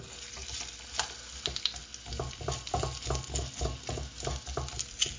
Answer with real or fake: real